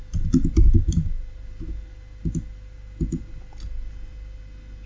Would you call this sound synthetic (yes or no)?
no